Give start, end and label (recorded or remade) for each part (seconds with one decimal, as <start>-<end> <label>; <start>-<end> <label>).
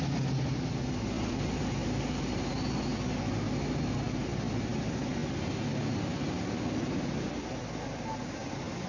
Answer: 0.0-8.9 recorded